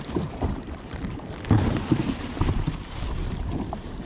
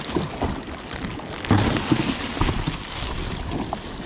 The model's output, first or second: first